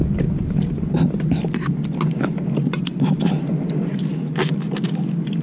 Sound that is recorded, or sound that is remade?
recorded